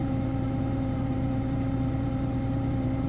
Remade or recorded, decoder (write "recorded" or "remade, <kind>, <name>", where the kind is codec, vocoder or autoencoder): remade, vocoder, BigVGAN v2